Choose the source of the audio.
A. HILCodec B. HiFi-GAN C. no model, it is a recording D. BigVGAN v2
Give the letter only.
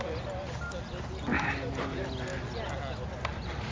C